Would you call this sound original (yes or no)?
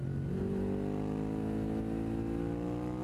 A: yes